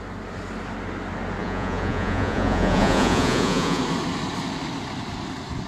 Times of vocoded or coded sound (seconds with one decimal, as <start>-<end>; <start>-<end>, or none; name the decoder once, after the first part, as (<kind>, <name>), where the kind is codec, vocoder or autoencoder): 1.4-3.8 (vocoder, Vocos)